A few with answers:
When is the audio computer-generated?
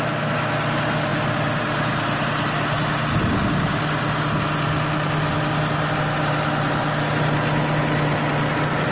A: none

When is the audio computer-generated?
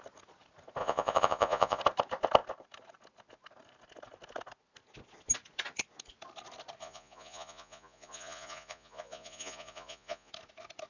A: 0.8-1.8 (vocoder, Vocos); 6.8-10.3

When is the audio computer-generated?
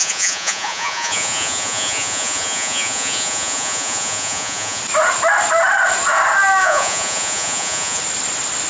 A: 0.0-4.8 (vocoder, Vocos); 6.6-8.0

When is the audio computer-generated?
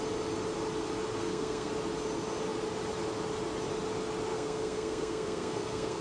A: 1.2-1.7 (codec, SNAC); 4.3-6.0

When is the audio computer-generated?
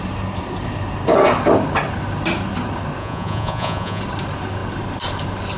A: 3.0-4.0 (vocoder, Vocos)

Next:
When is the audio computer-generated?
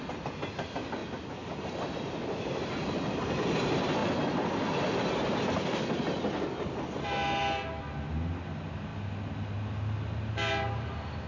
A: none